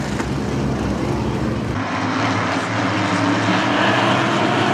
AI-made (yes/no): no